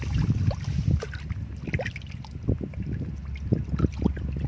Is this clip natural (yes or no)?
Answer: yes